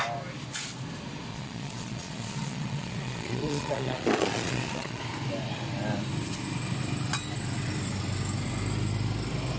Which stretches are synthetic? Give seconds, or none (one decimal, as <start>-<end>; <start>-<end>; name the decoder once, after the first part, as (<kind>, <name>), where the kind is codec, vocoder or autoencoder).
1.3-5.0 (vocoder, Vocos)